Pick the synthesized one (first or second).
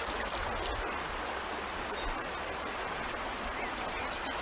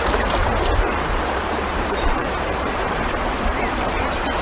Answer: second